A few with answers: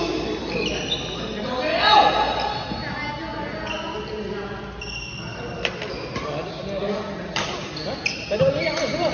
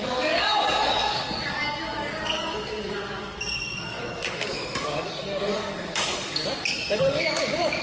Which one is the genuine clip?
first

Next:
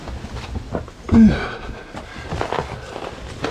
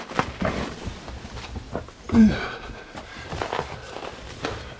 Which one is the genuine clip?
first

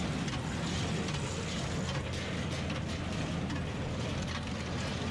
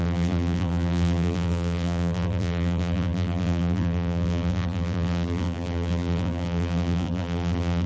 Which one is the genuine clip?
first